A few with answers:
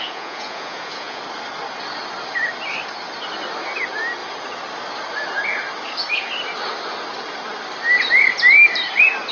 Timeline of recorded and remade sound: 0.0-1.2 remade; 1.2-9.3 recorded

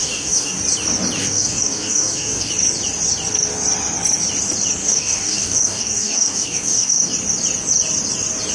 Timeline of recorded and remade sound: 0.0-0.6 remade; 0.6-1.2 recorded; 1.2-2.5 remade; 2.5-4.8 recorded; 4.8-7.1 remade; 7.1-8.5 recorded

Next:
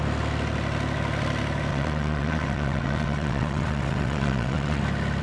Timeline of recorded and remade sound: 0.0-1.7 recorded; 1.7-4.8 remade; 4.8-5.2 recorded

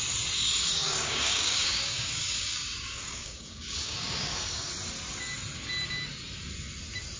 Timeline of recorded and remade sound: 0.0-0.4 recorded; 0.4-4.7 remade; 4.7-7.2 recorded

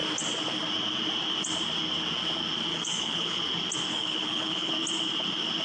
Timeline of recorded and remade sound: 0.0-2.7 recorded; 2.7-3.4 remade; 3.4-3.9 recorded; 3.9-4.7 remade; 4.7-5.6 recorded